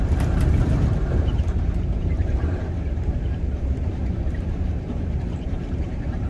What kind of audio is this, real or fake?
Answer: fake